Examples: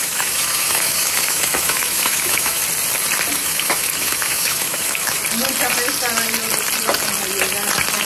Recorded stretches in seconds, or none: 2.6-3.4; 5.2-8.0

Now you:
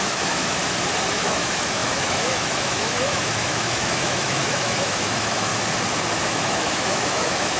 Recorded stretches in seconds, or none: 0.6-1.1; 5.5-6.3

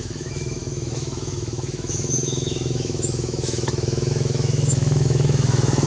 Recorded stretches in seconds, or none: none

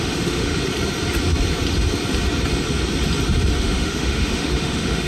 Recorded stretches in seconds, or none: 0.5-3.6

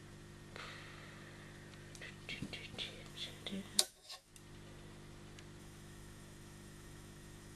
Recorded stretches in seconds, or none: 0.0-3.1; 4.3-5.6

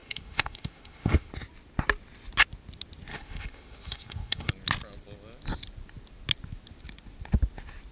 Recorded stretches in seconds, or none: 1.3-3.1; 4.5-7.9